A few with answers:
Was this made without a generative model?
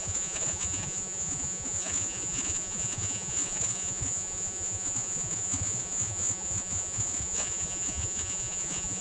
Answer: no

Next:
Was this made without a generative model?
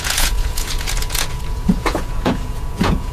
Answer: no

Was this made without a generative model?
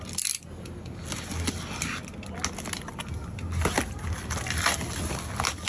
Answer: yes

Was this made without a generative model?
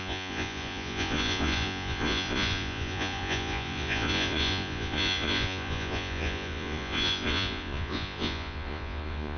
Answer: no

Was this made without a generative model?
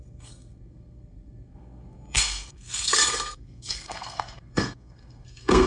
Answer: no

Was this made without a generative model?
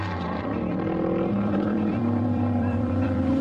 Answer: no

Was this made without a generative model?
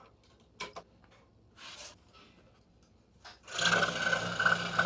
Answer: yes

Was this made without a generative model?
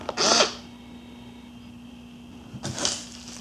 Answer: yes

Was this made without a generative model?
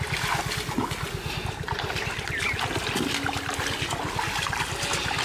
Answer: yes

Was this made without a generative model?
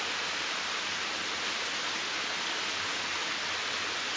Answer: yes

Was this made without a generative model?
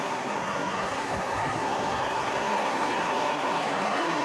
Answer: no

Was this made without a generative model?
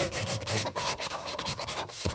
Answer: no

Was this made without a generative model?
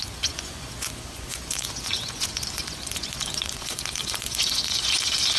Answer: no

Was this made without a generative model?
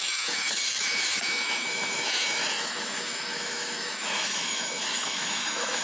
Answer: no